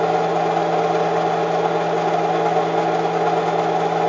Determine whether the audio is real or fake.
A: real